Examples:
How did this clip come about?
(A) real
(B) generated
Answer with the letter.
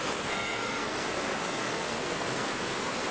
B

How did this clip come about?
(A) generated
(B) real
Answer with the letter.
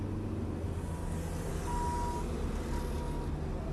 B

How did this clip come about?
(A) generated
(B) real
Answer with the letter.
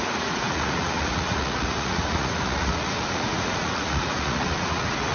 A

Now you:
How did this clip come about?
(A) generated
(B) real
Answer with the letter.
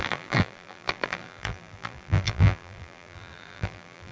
A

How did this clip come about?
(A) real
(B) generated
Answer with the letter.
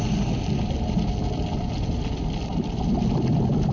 A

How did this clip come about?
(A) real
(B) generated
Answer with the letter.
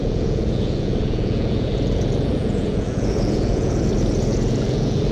B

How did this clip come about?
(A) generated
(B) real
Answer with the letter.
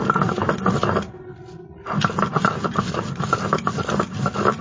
B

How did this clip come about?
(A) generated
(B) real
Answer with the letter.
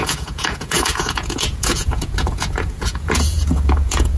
A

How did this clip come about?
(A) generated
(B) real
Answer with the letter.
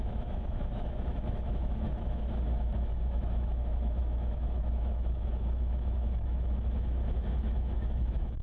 A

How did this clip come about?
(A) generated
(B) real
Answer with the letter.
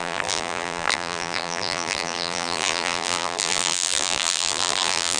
A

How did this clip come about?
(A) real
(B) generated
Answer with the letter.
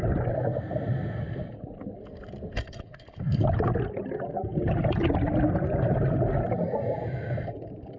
A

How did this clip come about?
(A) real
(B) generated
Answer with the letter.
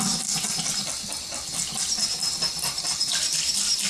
A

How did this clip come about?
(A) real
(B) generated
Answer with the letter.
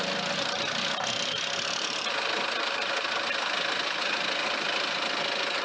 A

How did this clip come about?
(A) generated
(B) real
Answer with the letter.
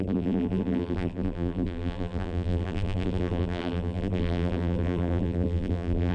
A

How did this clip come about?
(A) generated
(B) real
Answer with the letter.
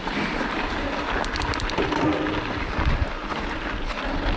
B